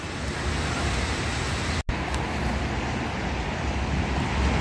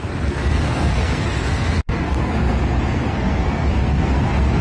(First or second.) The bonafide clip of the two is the first